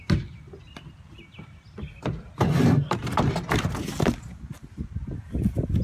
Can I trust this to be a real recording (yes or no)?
yes